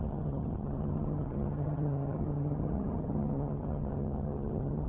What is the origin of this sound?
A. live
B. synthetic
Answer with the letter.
B